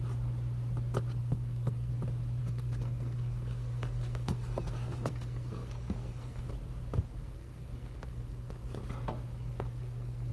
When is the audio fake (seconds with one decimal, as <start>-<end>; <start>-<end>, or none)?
1.2-1.9; 2.4-6.5; 7.0-8.8; 9.3-10.3